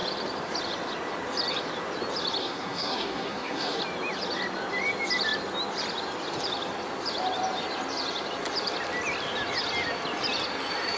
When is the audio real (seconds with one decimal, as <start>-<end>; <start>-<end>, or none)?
0.0-2.4; 3.8-11.0

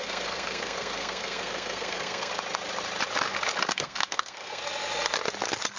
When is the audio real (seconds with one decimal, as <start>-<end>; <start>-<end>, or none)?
2.3-3.7; 4.6-5.8

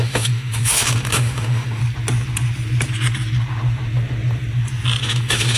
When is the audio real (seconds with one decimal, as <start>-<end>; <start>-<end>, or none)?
1.8-5.0

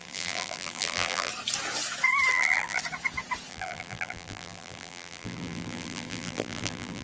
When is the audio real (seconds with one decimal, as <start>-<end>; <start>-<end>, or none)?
1.3-2.3; 2.8-3.5